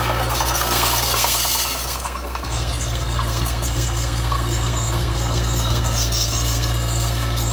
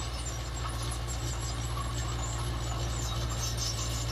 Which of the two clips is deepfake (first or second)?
first